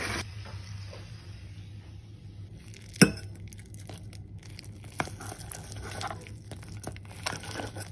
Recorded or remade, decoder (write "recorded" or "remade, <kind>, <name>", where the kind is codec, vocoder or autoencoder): recorded